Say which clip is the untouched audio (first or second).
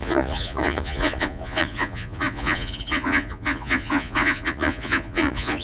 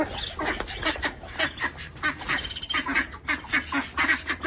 second